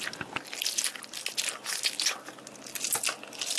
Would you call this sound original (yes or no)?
yes